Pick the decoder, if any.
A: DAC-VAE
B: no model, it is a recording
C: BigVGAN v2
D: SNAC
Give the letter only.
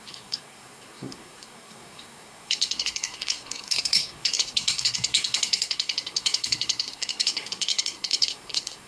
D